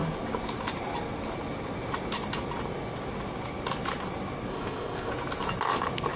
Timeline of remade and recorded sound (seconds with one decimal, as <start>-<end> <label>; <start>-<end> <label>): 0.0-4.5 recorded; 4.5-5.1 remade; 5.1-6.2 recorded